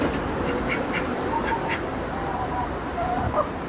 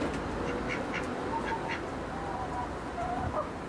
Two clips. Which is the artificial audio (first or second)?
first